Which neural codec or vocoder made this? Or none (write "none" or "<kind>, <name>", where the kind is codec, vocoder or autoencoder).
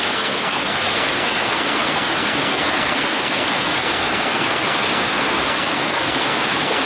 codec, SNAC